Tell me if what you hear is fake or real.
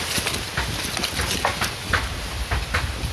real